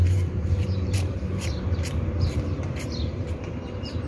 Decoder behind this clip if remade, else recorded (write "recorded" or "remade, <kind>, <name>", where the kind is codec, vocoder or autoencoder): remade, vocoder, BigVGAN v2